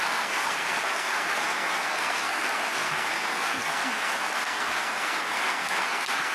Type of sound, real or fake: fake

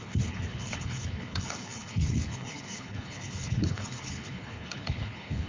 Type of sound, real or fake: fake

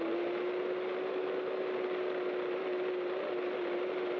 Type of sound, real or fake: real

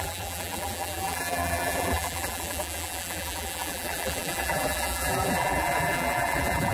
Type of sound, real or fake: fake